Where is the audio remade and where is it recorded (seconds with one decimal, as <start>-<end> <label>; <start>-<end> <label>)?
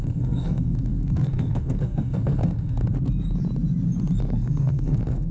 0.0-2.8 remade; 2.8-4.2 recorded; 4.2-5.3 remade